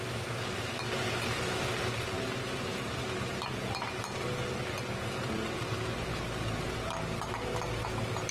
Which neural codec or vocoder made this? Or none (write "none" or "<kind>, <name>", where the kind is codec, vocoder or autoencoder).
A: none